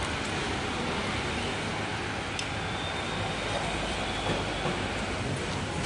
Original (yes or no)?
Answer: yes